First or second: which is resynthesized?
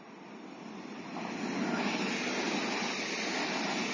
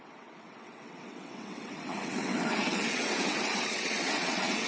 second